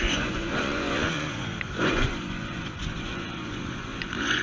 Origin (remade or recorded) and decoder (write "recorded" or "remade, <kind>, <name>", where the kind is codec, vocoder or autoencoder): remade, vocoder, Vocos